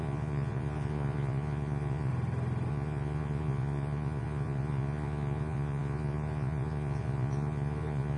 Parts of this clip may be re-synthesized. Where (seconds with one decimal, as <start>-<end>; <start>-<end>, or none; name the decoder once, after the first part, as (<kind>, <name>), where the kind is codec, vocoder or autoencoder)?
0.0-2.1 (vocoder, Vocos); 2.7-8.2